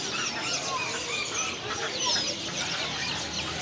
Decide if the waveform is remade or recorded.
recorded